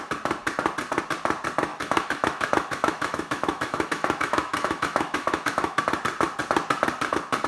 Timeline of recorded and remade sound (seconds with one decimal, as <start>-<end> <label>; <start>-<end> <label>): 0.0-1.7 recorded; 1.7-5.8 remade; 5.8-7.5 recorded